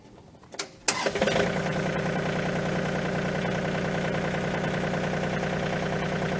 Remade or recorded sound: recorded